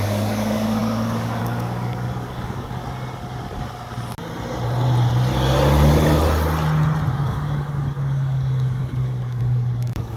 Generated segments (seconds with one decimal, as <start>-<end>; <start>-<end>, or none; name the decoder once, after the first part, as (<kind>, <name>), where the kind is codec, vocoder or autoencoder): 0.0-2.8 (codec, DAC); 7.1-10.2